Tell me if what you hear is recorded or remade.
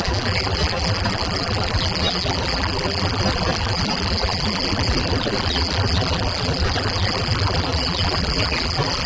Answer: remade